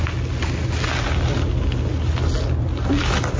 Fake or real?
real